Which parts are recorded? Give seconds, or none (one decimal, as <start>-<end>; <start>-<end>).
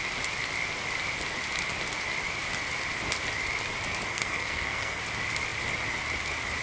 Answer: 0.0-4.1; 5.0-6.6